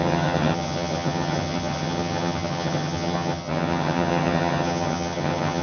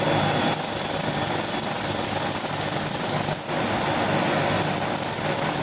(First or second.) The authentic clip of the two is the second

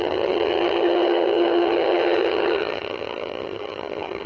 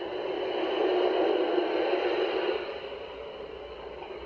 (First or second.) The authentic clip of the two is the second